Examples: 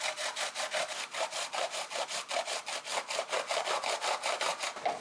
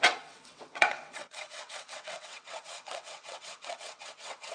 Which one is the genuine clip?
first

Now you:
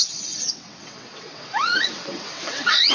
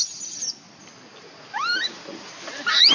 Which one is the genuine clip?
second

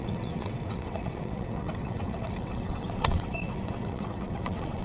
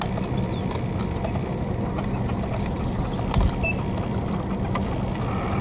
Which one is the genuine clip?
second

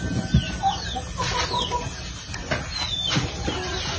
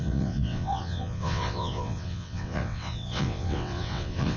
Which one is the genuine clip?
first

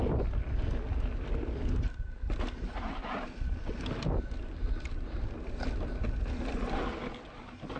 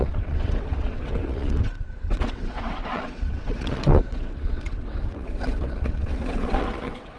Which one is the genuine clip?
first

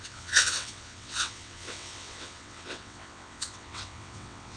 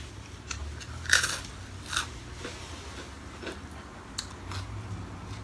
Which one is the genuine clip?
second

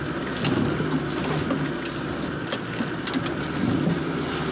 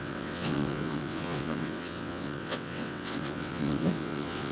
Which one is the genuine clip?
first